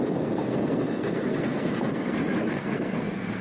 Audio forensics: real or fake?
fake